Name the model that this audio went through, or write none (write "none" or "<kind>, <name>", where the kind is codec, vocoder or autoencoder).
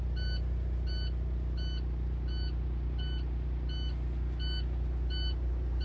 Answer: none